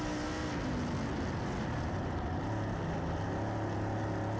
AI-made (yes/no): no